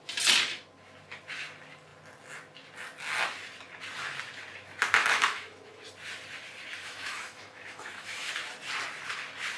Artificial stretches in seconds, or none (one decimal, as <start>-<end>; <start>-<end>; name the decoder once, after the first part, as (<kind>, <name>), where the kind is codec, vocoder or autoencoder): 5.0-5.8 (autoencoder, DAC-VAE); 6.8-8.3